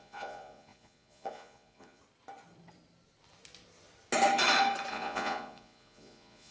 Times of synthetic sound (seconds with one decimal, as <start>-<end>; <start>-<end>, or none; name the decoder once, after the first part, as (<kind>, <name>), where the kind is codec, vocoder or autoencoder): 0.0-2.0 (vocoder, Vocos); 4.9-6.5